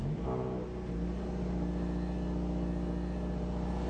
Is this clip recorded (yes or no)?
yes